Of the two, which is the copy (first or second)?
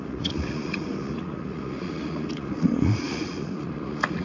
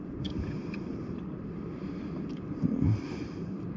first